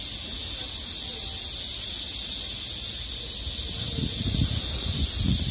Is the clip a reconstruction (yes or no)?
no